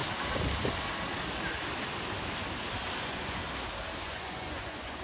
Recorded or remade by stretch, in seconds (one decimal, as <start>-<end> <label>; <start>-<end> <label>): 0.0-3.0 recorded; 3.0-3.4 remade; 3.4-4.0 recorded; 4.0-5.0 remade